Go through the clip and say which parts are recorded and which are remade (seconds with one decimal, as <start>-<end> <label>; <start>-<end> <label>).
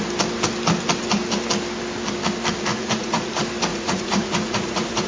0.0-2.7 recorded; 2.7-3.3 remade; 3.3-3.7 recorded; 3.7-5.1 remade